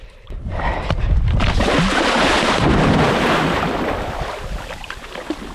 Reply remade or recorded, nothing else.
remade